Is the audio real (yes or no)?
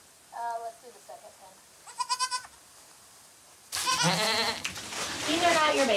yes